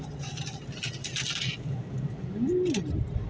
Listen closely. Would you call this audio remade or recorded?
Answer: recorded